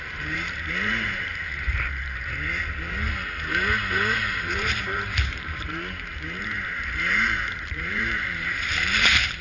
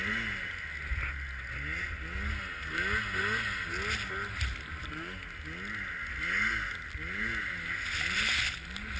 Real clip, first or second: second